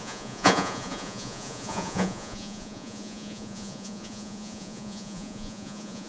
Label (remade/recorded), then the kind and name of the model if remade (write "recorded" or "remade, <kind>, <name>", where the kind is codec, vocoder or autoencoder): remade, vocoder, Vocos